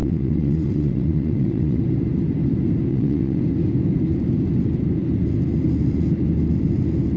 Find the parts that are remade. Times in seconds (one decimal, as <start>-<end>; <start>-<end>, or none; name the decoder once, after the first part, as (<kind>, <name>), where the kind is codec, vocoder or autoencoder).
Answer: 0.0-1.8 (vocoder, WaveNeXt); 2.9-3.4